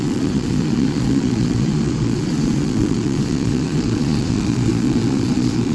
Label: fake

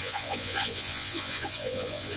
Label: fake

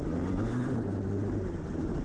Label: real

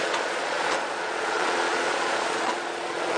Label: fake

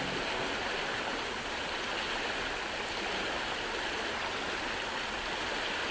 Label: real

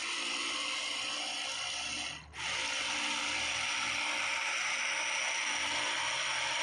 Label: real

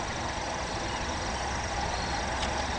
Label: fake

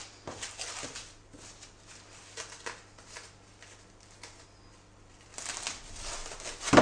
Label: real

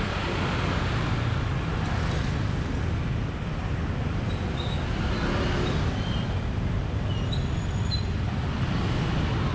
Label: real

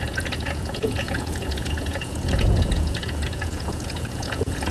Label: fake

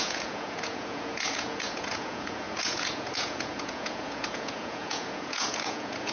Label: fake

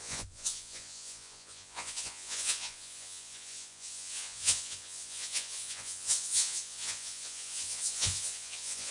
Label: fake